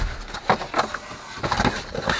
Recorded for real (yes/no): yes